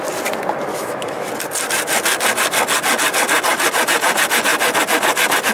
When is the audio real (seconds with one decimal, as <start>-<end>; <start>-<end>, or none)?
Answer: 0.0-0.7; 1.3-5.5